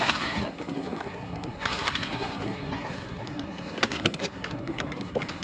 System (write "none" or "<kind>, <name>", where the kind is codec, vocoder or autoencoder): codec, SNAC